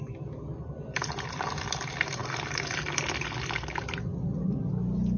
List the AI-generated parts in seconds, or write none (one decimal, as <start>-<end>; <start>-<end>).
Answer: none